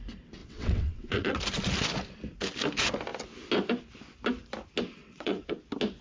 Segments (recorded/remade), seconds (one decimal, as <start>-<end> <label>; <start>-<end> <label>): 0.0-0.4 recorded; 0.4-1.4 remade; 1.4-5.0 recorded; 5.0-5.5 remade; 5.5-6.0 recorded